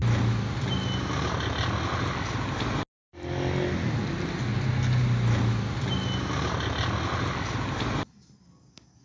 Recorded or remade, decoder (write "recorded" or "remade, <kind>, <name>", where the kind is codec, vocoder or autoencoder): recorded